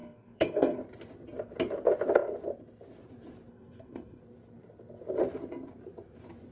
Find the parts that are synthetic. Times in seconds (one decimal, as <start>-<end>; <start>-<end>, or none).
0.0-0.8; 3.5-4.2

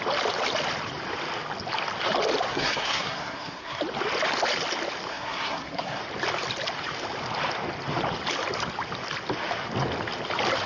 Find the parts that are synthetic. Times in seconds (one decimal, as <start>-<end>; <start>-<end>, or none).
2.5-3.8; 5.1-6.0